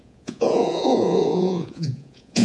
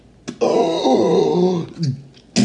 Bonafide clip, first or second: second